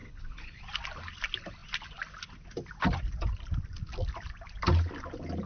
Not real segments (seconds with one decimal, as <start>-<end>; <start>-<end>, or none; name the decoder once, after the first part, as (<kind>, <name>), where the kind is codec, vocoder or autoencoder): 0.0-0.6 (codec, HILCodec)